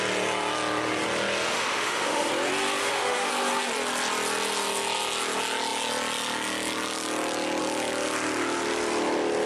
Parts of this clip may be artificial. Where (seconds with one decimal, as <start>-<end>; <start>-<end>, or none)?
1.5-2.3; 2.8-3.3